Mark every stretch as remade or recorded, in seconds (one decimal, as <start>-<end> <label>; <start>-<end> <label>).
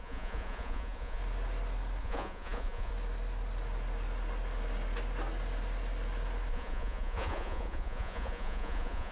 0.0-1.2 remade; 1.2-2.0 recorded; 2.0-2.9 remade; 2.9-6.5 recorded; 6.5-9.1 remade